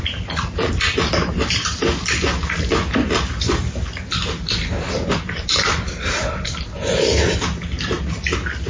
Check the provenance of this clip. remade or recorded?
recorded